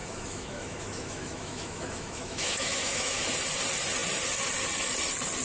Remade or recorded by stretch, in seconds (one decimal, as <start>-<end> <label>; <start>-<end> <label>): 0.0-3.2 remade; 3.2-5.4 recorded